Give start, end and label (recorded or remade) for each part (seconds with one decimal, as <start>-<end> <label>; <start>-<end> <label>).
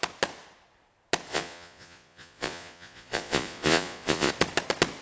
0.0-1.3 recorded; 1.3-4.3 remade; 4.3-5.0 recorded